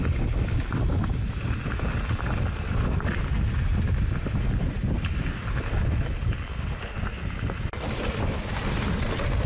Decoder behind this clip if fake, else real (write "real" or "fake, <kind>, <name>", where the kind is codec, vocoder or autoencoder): real